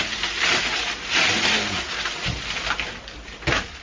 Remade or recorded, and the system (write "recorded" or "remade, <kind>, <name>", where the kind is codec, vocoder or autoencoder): recorded